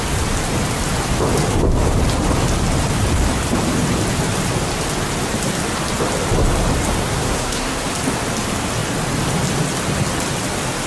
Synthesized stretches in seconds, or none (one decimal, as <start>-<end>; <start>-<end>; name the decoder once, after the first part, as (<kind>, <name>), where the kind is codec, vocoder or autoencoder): 7.0-7.8 (codec, SNAC)